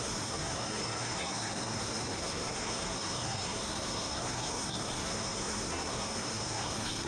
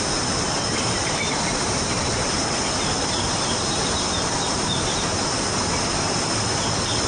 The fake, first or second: first